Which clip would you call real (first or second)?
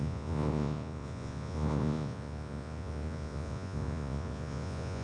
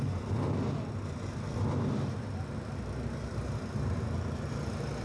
second